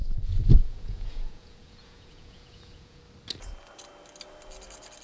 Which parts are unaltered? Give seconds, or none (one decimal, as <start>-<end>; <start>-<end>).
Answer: 3.0-5.0